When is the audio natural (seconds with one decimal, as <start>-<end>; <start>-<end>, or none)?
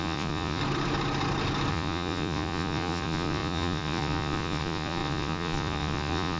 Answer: 0.6-1.7